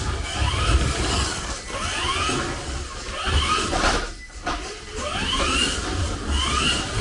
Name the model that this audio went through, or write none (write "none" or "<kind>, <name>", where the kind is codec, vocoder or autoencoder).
none